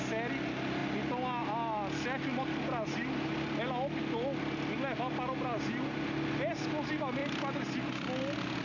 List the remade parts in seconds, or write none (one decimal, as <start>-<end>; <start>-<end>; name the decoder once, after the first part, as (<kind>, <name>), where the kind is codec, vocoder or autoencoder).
none